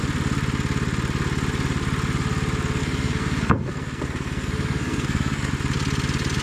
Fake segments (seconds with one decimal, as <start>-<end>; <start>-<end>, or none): 2.8-5.5